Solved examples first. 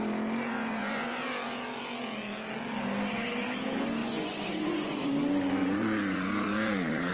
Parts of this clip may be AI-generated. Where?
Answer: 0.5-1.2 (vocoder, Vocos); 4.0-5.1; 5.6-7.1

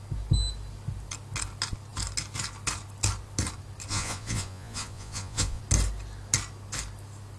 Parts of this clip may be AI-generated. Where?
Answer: 3.9-5.6 (vocoder, Vocos)